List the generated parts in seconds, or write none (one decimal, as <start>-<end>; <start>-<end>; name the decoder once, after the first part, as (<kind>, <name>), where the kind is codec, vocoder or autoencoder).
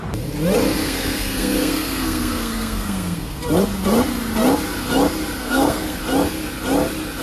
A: 0.8-3.4 (codec, SNAC); 5.4-6.0